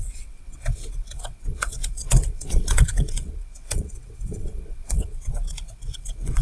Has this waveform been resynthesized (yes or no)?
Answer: yes